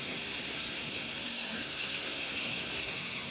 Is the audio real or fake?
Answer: fake